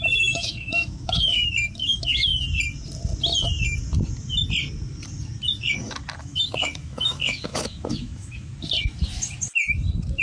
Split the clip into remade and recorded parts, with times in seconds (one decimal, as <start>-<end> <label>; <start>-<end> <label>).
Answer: 0.0-2.3 remade; 2.3-6.2 recorded; 6.2-8.5 remade; 8.5-10.2 recorded